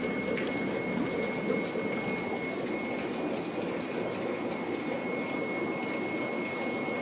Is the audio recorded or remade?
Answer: recorded